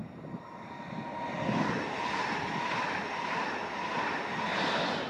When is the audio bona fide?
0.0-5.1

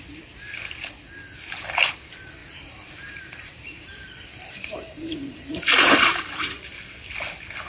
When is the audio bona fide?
0.0-2.4; 6.6-7.7

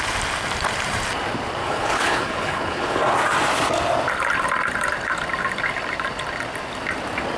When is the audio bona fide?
0.0-1.6; 3.0-7.4

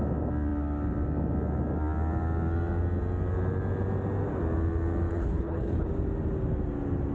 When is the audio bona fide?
0.0-5.1; 5.9-7.1

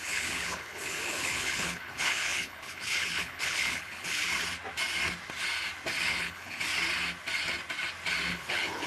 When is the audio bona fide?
4.3-6.1; 6.7-8.3

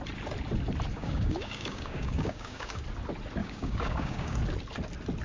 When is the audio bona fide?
0.0-0.9; 2.8-3.4; 4.4-5.2

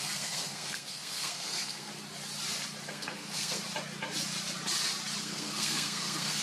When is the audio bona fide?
1.9-2.9; 3.6-5.2